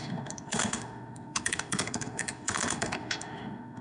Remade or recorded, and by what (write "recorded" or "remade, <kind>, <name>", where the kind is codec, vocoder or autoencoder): remade, autoencoder, DAC-VAE